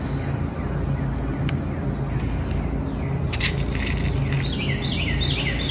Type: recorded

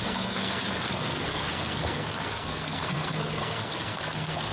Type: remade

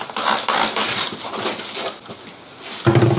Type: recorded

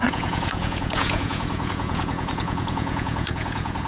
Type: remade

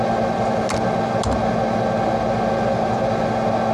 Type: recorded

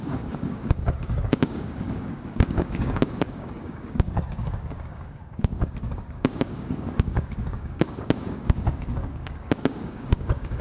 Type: remade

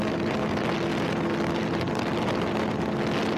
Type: recorded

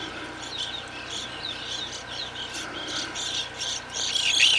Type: recorded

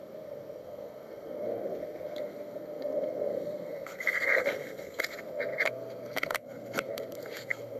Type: remade